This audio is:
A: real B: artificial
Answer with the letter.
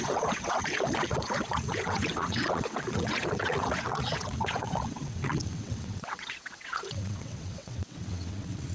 B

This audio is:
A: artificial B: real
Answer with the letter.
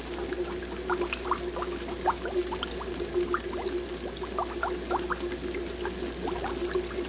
B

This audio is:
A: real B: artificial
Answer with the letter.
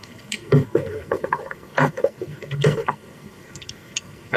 B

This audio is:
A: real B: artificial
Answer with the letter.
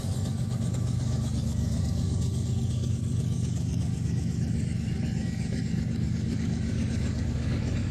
B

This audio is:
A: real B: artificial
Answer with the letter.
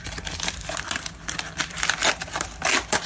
A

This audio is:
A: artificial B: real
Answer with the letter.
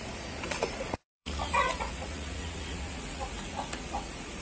A